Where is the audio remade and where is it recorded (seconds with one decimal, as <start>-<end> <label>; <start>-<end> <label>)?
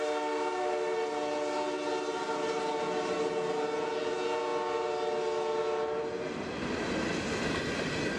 0.0-8.2 recorded